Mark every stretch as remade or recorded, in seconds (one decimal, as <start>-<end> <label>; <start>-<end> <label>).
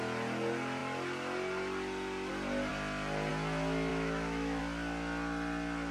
0.0-3.9 recorded; 3.9-4.6 remade; 4.6-5.9 recorded